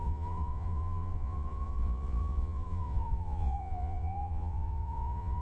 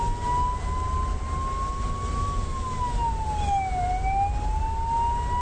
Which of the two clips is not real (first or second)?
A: first